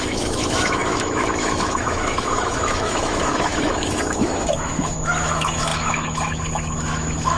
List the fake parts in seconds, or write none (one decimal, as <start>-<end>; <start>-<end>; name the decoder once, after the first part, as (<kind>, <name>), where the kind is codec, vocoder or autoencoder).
0.0-7.4 (autoencoder, DAC-VAE)